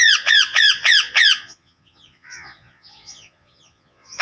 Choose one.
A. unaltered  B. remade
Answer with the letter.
B